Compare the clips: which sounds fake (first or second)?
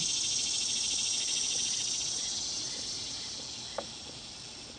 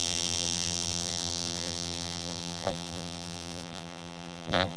second